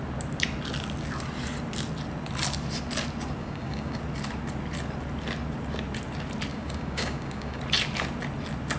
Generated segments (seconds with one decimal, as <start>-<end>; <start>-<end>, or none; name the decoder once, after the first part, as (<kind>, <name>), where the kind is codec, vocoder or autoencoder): 3.4-4.0 (codec, DAC); 6.5-7.6